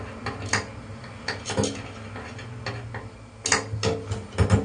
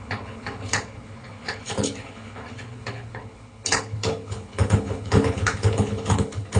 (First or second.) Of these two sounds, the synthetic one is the second